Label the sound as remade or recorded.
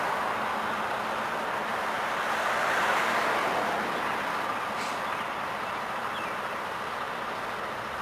recorded